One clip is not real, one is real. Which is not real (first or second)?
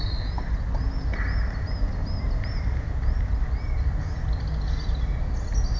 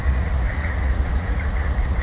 second